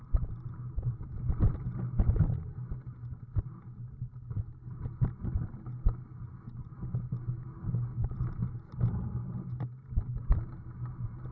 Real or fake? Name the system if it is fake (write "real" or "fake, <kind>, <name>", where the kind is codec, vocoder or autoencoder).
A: real